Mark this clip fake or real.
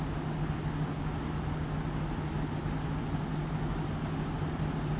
real